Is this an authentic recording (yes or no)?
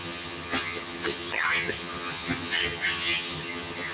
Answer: no